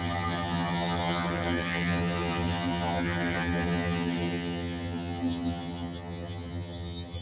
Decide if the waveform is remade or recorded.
remade